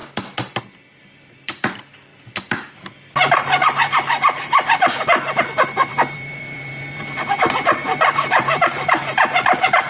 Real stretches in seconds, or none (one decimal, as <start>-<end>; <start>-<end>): 0.0-0.6; 2.1-5.4